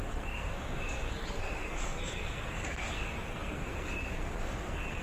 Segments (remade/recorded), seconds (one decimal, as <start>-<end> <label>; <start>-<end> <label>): 0.0-5.0 remade

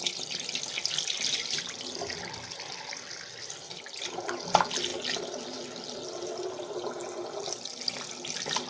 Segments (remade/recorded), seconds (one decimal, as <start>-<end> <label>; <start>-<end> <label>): 0.0-8.7 recorded

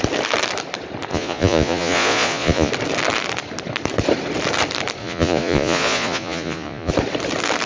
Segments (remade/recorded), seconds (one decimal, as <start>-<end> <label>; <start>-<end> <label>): 0.0-1.1 recorded; 1.1-2.7 remade; 2.7-5.0 recorded; 5.0-6.9 remade; 6.9-7.7 recorded

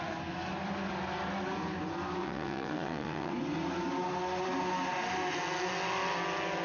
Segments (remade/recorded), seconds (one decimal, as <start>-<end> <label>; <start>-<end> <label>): 0.0-2.2 recorded; 2.2-3.3 remade; 3.3-6.6 recorded